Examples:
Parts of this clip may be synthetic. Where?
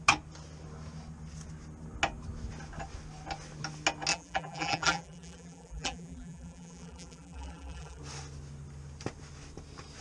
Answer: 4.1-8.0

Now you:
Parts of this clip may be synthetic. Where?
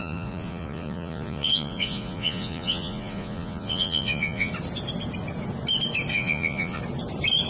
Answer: 0.0-4.5; 6.1-6.8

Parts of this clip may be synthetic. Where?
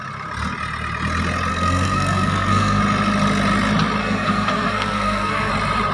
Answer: 1.5-2.8; 4.0-5.5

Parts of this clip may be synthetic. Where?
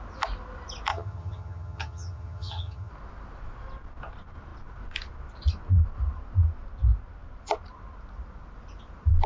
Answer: 0.9-2.9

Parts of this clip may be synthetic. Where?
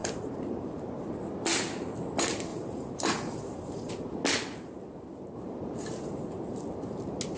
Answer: 0.0-0.9; 2.5-3.9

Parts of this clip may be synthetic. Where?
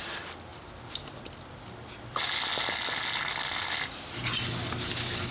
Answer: none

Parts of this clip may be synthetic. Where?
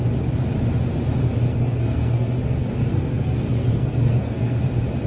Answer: 1.5-4.6